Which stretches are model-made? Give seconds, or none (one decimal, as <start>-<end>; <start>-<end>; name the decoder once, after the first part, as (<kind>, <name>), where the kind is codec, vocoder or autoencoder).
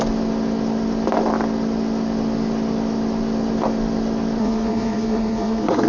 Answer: 4.4-5.9 (codec, SNAC)